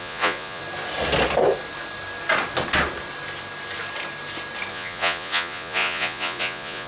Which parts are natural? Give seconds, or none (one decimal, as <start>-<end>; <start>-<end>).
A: 0.6-4.7